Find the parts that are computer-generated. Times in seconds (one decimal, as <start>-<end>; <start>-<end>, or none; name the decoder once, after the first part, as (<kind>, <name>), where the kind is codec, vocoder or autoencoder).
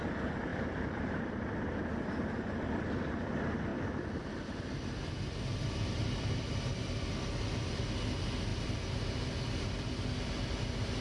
0.5-1.8 (vocoder, BigVGAN v2); 3.7-7.8; 8.5-11.0